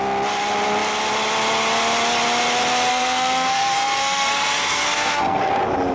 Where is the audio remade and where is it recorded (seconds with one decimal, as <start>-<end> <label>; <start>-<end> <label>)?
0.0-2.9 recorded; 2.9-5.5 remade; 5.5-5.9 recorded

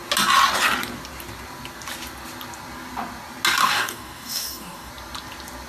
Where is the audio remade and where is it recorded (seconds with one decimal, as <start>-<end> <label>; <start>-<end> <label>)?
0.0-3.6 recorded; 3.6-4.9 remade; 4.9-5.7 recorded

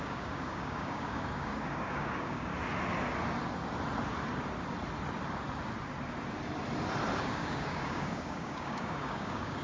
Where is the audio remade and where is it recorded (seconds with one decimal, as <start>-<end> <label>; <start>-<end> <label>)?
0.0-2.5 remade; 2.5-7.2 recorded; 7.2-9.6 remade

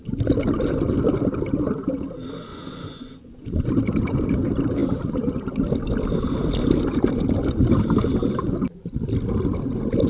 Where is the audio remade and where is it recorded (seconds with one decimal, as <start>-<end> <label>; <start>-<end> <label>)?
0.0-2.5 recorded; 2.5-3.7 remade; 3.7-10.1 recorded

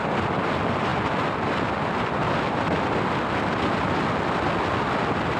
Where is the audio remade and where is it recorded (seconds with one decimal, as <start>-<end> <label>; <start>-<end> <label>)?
0.0-5.4 recorded

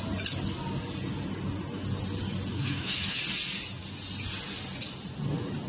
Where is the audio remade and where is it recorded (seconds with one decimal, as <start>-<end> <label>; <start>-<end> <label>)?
0.0-2.5 recorded; 2.5-3.2 remade; 3.2-5.7 recorded

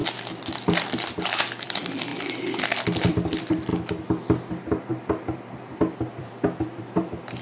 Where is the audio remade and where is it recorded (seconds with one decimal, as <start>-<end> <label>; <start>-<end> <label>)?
0.0-2.1 remade; 2.1-3.1 recorded; 3.1-3.7 remade; 3.7-4.5 recorded; 4.5-7.4 remade

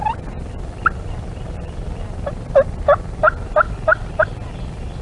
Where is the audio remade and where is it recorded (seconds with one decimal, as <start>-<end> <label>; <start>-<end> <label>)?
0.0-5.0 recorded